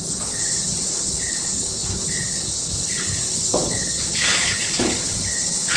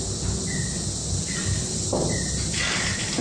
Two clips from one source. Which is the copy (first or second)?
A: first